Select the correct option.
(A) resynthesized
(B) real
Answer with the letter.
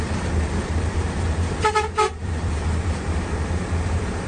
A